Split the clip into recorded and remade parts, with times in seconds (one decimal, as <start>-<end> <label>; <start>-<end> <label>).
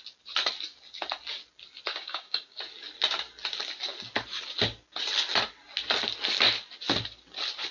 0.0-1.9 recorded; 1.9-2.6 remade; 2.6-7.7 recorded